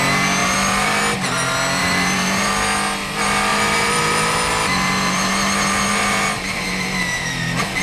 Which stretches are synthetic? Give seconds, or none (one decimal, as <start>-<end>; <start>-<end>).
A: 0.4-1.0; 1.8-2.5; 3.5-7.3